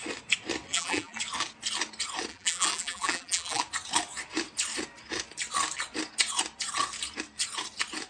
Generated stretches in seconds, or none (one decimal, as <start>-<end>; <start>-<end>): 0.7-1.2; 2.3-3.6